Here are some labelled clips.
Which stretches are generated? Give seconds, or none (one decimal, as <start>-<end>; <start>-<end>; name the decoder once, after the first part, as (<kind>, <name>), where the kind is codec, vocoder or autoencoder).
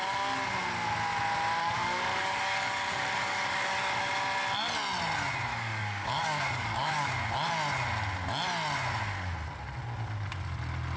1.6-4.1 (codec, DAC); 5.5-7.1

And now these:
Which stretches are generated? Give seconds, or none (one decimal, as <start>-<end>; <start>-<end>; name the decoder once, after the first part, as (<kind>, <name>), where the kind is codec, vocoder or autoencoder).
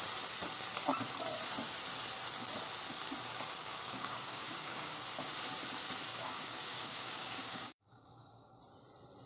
3.6-5.0 (codec, DAC); 6.1-8.6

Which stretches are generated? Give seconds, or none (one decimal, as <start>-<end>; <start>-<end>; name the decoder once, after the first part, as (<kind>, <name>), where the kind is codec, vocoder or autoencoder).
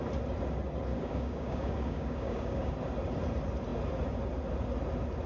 0.9-2.7 (codec, DAC)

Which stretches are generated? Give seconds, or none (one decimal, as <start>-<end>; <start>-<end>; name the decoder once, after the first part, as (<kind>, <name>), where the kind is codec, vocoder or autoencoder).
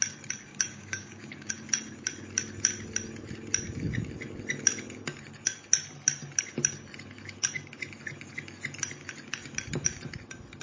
0.5-1.5 (codec, DAC)